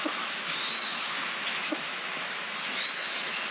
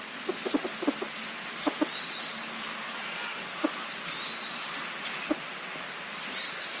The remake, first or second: first